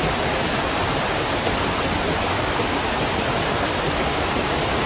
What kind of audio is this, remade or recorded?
recorded